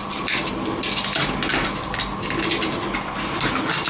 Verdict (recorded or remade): recorded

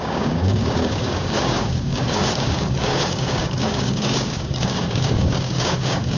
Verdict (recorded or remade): remade